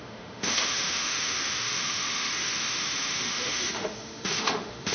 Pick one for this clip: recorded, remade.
remade